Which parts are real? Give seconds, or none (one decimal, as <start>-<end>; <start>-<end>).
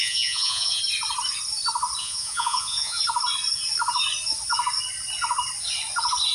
0.8-2.0; 3.0-6.3